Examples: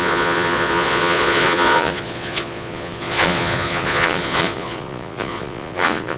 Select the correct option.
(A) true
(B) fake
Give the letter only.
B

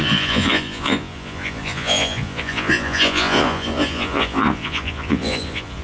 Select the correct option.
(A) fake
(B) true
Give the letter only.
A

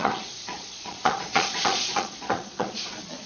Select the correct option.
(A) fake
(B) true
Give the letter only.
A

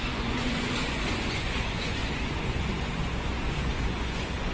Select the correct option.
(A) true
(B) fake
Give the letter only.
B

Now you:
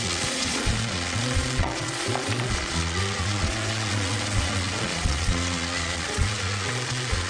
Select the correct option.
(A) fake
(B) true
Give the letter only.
A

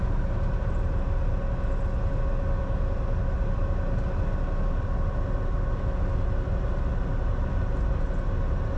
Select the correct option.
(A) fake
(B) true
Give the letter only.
B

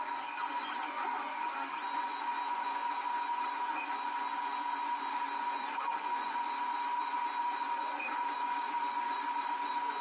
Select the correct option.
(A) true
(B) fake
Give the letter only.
B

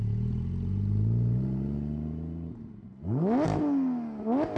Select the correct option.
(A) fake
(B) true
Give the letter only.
B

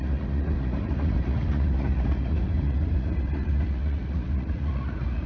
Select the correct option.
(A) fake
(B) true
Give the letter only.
A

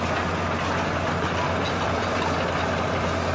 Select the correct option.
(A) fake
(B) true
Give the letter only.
B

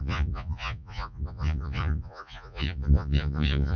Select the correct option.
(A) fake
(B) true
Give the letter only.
A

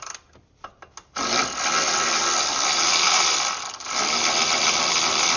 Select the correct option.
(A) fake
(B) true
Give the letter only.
B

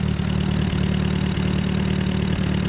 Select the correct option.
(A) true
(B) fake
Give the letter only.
A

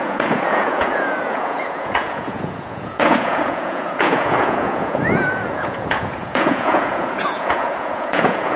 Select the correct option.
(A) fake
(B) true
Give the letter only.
A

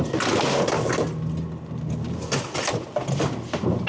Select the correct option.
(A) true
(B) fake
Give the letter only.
A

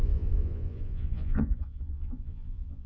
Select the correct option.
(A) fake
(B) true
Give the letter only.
A